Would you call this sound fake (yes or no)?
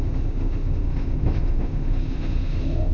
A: yes